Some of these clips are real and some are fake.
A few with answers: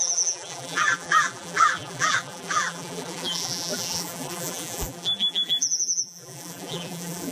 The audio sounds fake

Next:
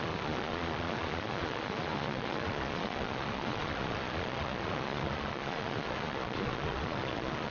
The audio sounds fake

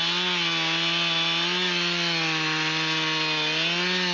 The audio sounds real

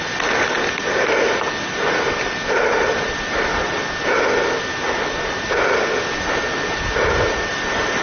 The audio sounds real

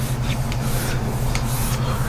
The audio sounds real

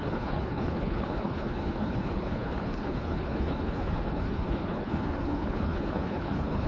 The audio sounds fake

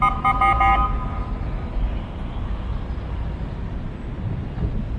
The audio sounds real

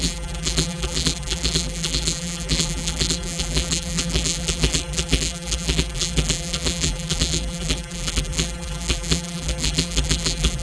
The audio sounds fake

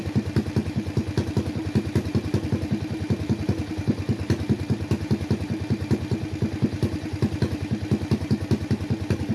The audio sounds real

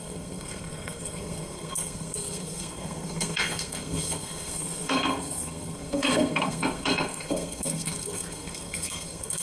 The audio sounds fake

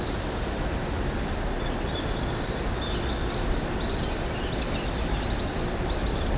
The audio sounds fake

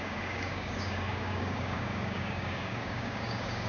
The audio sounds fake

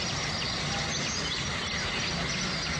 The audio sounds real